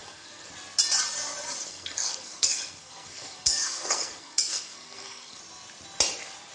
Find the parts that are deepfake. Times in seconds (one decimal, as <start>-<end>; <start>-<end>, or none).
0.0-0.5; 1.6-5.4